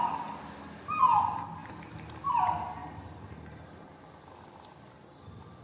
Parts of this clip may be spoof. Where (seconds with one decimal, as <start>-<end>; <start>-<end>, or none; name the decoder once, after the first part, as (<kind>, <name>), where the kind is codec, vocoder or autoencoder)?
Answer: 1.6-2.4 (vocoder, BigVGAN v2)